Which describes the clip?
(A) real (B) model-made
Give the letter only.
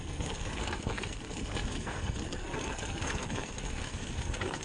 B